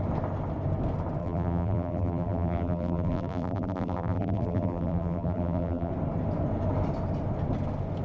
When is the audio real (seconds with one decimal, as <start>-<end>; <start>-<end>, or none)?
0.0-1.2; 5.9-8.0